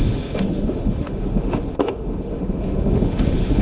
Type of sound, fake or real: fake